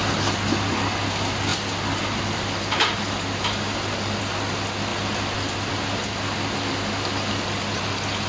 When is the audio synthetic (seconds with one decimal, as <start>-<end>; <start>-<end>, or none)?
none